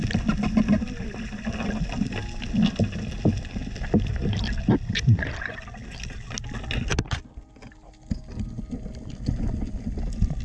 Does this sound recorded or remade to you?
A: recorded